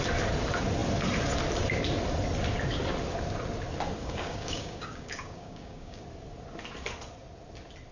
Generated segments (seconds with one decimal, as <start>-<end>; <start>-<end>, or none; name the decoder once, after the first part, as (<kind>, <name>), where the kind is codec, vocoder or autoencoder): 4.0-6.0 (codec, DAC)